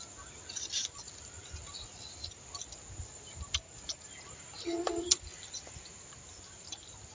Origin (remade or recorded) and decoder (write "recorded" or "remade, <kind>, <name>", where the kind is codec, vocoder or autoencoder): recorded